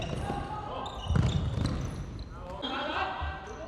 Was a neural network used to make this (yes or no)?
no